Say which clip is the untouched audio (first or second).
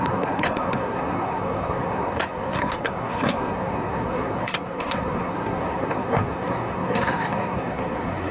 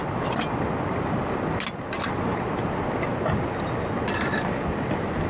second